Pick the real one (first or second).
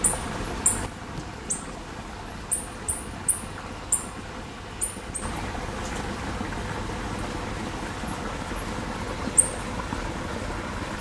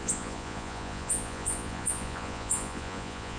first